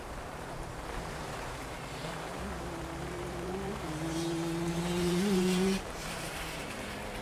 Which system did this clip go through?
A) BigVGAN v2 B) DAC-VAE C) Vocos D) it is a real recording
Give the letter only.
A